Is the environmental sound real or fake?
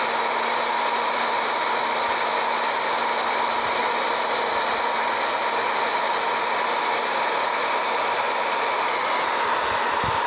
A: real